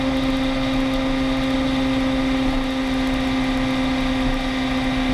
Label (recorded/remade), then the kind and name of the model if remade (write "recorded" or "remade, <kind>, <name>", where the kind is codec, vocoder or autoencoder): recorded